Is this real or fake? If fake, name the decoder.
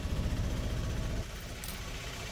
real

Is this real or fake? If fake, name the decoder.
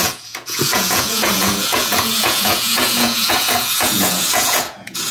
fake, vocoder, Vocos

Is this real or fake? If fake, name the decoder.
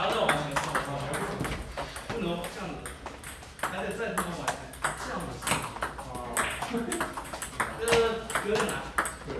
real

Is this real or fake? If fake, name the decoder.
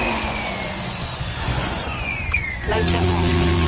fake, vocoder, Vocos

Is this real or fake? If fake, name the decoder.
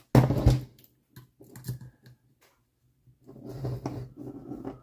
real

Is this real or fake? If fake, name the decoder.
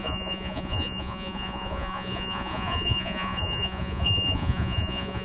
fake, vocoder, Vocos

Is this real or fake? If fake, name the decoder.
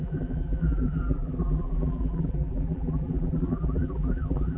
fake, vocoder, BigVGAN v2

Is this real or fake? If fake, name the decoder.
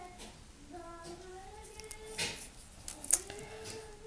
real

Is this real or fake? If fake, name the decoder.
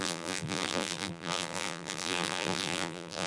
fake, vocoder, BigVGAN v2